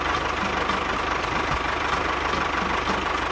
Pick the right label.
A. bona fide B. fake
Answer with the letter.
B